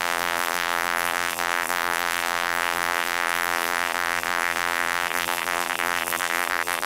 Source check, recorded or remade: remade